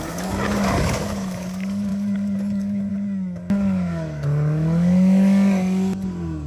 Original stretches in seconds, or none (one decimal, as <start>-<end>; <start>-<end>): none